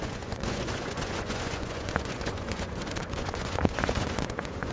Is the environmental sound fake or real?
fake